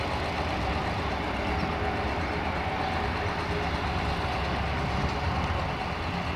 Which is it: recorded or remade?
recorded